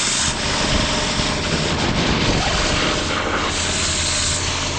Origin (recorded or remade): recorded